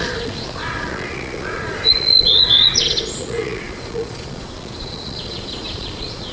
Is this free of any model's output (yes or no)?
no